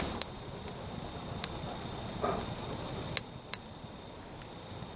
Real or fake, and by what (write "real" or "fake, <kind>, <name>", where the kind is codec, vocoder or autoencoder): real